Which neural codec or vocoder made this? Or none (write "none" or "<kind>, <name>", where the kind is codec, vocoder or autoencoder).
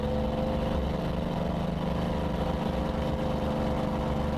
none